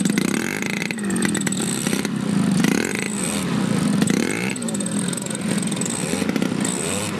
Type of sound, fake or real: fake